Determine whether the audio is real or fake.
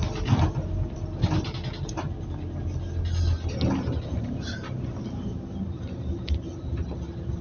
real